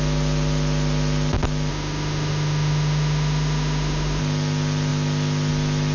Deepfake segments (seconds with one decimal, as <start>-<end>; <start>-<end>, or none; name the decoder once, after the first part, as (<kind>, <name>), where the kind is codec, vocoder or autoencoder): 1.7-4.2 (autoencoder, DAC-VAE)

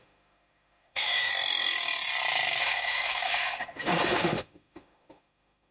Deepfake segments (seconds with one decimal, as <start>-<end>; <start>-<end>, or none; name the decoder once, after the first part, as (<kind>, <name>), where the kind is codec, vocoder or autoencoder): 0.0-1.3 (autoencoder, DAC-VAE); 2.6-5.7

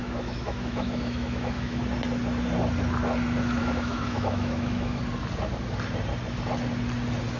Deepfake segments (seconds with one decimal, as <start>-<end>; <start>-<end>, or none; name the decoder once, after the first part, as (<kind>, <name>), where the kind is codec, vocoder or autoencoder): 0.0-1.8 (autoencoder, DAC-VAE); 3.6-5.0

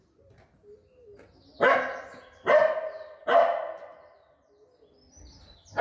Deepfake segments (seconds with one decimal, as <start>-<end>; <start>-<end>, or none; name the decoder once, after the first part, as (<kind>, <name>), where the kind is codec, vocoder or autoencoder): none

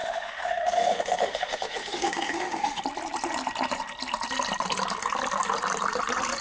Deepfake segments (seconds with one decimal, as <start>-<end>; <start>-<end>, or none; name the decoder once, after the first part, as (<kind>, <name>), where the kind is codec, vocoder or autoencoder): 0.0-2.8 (autoencoder, DAC-VAE)

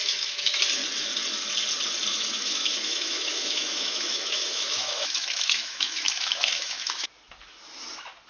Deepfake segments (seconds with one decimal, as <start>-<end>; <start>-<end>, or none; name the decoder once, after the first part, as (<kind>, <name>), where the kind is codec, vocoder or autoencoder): 0.0-0.6 (autoencoder, DAC-VAE); 2.1-7.1